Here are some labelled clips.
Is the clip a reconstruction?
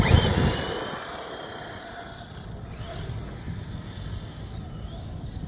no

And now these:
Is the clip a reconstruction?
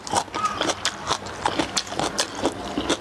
yes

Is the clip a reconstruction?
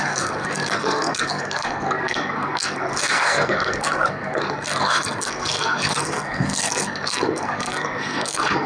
yes